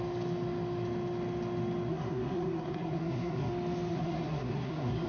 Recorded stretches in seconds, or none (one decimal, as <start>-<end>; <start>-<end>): 0.0-1.9; 3.5-3.9